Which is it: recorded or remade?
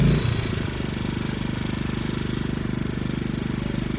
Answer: recorded